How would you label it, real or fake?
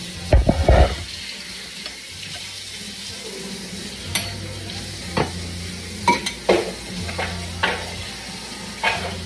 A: real